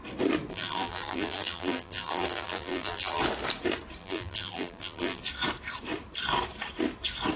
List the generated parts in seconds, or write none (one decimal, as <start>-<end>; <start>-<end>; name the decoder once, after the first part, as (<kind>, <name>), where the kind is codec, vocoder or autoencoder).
0.5-3.2 (vocoder, BigVGAN v2); 4.0-5.2